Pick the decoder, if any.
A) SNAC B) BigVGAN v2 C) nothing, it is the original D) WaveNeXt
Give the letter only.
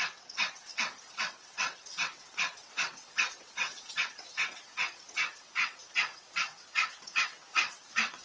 D